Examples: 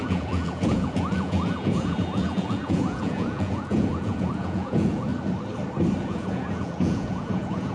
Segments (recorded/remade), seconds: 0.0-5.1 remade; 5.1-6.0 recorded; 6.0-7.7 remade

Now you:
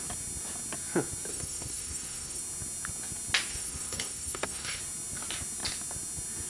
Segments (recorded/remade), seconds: 0.0-1.3 recorded; 1.3-2.4 remade; 2.4-3.5 recorded; 3.5-4.8 remade; 4.8-6.5 recorded

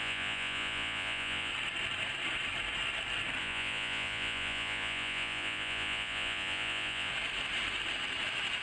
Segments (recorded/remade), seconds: 0.0-1.5 remade; 1.5-3.4 recorded; 3.4-7.1 remade; 7.1-8.6 recorded

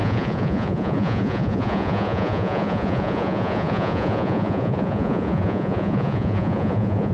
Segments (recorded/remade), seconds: 0.0-7.1 remade

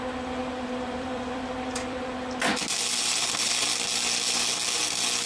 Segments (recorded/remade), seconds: 0.0-0.4 recorded; 0.4-2.1 remade; 2.1-5.3 recorded

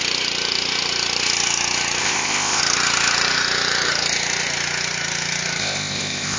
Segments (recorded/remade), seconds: 0.0-2.0 recorded; 2.0-2.6 remade; 2.6-5.6 recorded; 5.6-6.4 remade